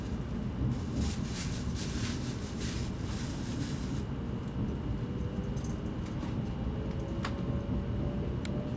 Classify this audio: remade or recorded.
recorded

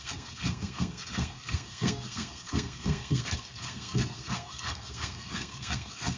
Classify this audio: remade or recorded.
remade